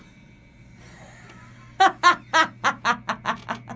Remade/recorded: recorded